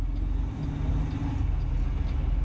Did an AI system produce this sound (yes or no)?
no